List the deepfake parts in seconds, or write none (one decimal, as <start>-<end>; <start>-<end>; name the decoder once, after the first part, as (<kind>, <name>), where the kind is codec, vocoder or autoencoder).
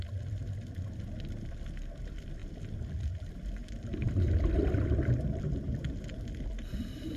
0.0-0.4 (vocoder, BigVGAN v2); 2.0-7.2